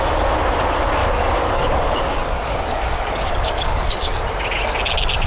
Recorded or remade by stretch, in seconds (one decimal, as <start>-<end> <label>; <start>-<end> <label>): 0.0-1.0 recorded; 1.0-4.2 remade; 4.2-5.3 recorded